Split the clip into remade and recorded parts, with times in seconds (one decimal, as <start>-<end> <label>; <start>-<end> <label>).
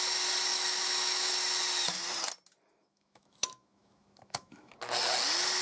0.0-0.5 recorded; 0.5-1.3 remade; 1.3-2.8 recorded; 2.8-4.7 remade; 4.7-5.6 recorded